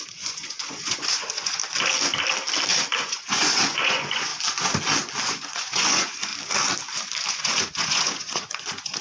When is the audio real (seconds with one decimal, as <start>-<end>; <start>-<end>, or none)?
1.6-3.0; 4.3-5.2; 6.3-7.3